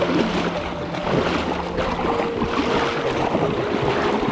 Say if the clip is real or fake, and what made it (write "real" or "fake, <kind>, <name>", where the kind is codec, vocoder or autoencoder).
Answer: real